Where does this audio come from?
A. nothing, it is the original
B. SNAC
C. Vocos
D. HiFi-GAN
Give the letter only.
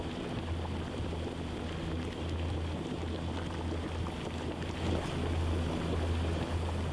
A